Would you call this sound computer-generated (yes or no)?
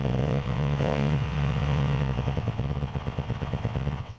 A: yes